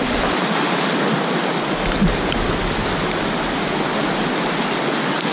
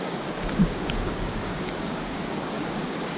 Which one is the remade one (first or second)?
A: second